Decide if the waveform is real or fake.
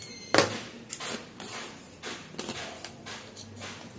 real